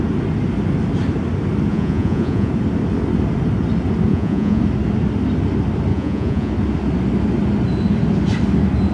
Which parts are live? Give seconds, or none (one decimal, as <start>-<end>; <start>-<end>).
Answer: 0.0-1.7; 2.5-4.1; 4.6-5.9; 6.5-8.9